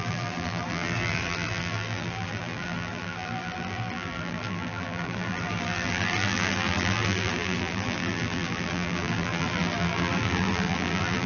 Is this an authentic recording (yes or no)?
no